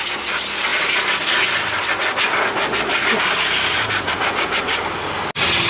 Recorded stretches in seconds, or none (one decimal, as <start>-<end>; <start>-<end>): 0.0-5.7